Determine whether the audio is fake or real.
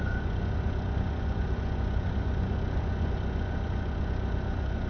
fake